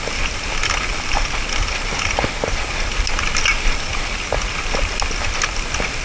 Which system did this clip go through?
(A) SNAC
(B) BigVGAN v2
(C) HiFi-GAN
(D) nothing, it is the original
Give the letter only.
D